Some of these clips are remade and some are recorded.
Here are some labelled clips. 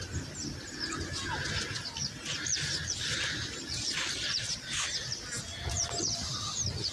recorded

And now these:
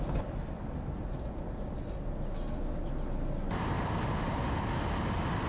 recorded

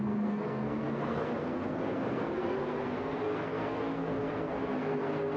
remade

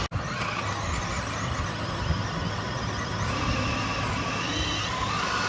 recorded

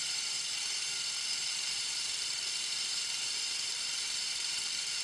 remade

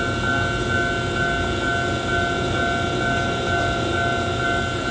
recorded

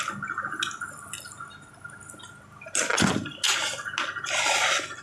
recorded